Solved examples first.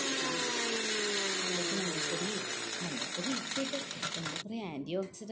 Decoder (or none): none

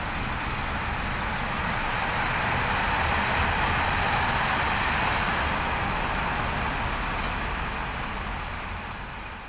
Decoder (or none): none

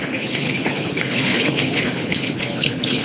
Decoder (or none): codec, HILCodec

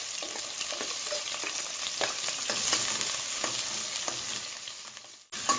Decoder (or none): none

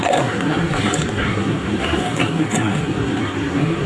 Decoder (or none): codec, SNAC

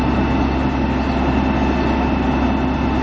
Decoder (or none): none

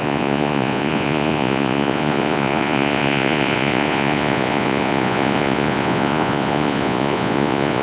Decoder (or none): vocoder, Vocos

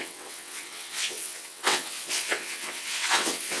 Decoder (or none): vocoder, WaveNeXt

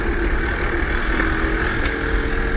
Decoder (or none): none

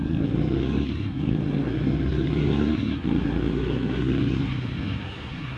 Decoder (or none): codec, SNAC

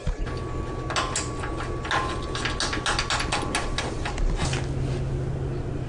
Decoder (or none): none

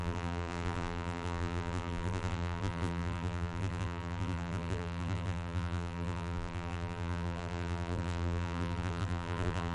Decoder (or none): vocoder, BigVGAN v2